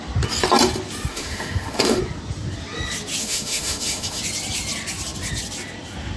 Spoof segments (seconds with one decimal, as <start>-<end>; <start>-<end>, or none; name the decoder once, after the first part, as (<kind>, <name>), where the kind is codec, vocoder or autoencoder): 1.1-2.0 (autoencoder, DAC-VAE); 3.2-4.2